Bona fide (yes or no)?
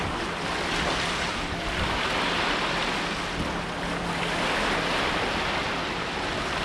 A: yes